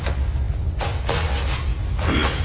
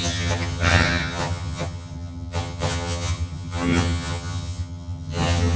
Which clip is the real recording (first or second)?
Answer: first